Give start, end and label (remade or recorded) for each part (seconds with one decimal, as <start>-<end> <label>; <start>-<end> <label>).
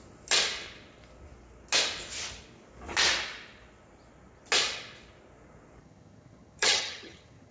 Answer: 0.0-5.8 recorded; 5.8-7.5 remade